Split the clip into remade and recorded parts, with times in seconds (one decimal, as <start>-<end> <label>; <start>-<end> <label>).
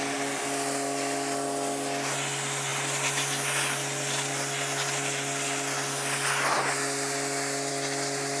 0.0-8.4 recorded